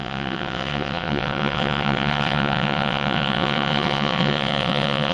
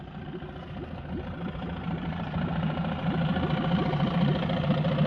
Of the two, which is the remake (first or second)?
first